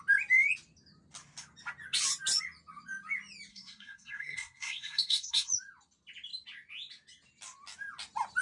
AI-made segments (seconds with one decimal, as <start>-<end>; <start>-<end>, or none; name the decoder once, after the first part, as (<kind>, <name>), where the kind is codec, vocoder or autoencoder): 3.5-5.5 (codec, SNAC)